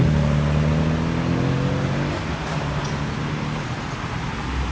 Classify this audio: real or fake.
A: real